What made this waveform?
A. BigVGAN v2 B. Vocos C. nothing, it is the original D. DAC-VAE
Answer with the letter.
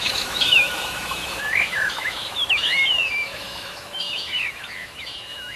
D